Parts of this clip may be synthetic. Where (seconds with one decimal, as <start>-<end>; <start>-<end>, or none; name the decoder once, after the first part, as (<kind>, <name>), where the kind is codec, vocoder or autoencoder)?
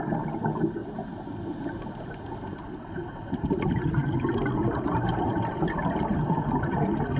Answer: 0.0-0.8 (vocoder, BigVGAN v2); 3.4-7.2